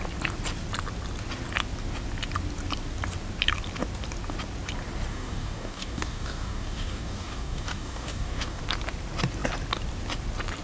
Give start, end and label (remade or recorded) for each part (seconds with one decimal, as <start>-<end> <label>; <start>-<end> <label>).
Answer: 0.0-5.1 recorded; 5.1-8.6 remade; 8.6-10.6 recorded